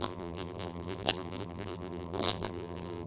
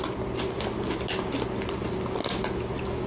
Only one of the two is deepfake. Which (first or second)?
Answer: first